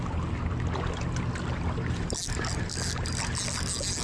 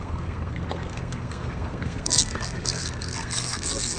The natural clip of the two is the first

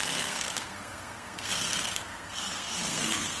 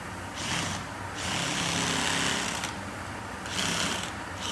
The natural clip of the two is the second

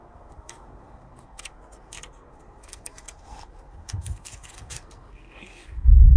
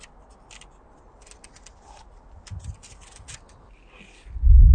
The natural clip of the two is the second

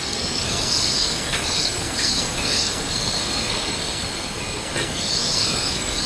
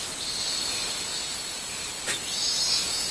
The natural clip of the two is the second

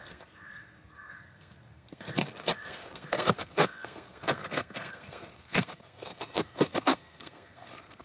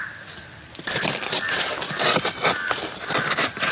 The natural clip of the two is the second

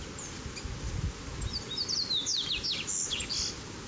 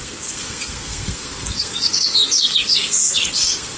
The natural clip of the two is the first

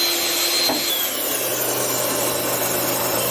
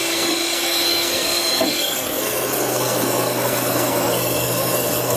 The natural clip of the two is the first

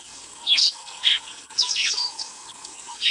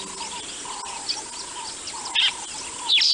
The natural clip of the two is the second